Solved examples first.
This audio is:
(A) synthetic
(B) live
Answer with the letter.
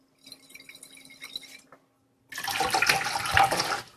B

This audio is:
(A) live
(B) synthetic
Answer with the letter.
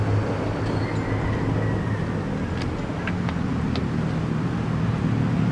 A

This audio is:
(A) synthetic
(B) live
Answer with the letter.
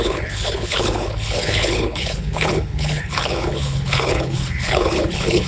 A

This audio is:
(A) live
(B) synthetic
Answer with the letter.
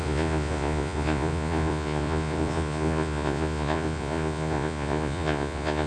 B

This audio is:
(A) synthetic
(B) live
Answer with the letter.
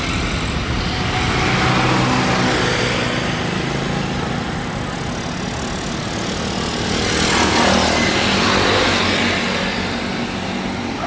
B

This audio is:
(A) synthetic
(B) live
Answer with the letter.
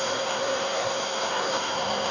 A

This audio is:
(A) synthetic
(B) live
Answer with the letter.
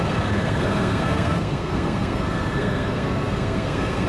A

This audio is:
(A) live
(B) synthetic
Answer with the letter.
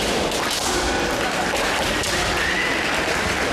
A